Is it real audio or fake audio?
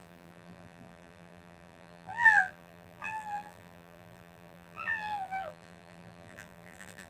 fake